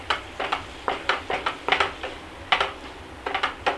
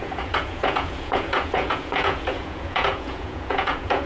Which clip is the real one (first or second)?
first